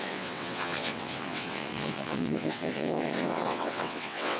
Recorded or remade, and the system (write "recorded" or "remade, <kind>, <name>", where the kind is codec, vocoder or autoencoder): remade, vocoder, WaveNeXt